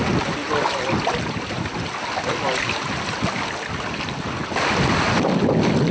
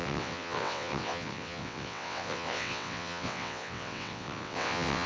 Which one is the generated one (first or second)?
second